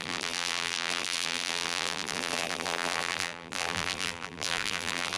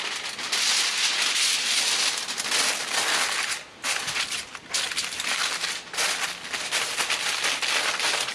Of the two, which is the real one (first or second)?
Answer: second